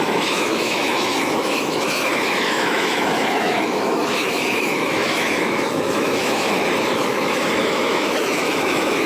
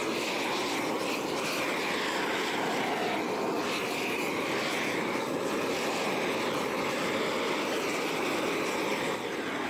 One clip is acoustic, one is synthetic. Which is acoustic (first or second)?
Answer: second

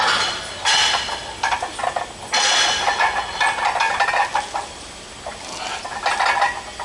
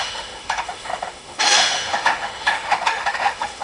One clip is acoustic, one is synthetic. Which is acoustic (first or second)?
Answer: first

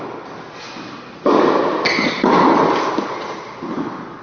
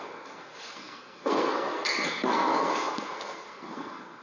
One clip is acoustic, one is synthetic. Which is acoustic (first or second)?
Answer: first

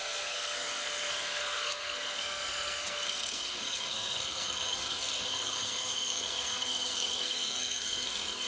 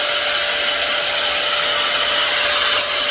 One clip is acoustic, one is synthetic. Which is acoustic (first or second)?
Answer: second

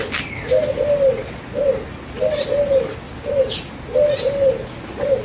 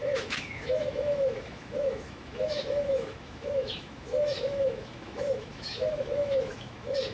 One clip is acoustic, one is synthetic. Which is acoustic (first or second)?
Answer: first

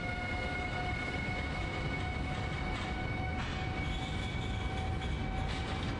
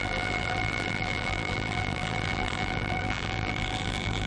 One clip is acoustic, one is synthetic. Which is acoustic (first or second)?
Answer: first